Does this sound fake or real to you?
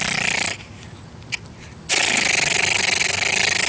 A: real